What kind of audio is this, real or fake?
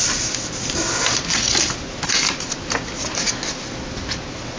real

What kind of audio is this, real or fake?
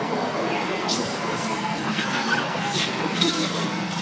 fake